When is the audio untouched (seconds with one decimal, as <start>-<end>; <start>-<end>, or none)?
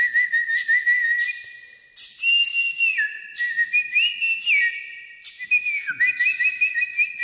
0.0-7.2